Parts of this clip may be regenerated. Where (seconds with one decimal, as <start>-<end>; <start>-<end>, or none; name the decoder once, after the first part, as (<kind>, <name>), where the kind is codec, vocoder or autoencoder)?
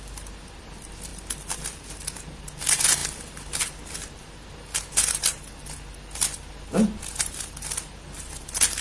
none